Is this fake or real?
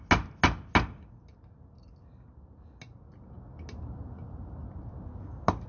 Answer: real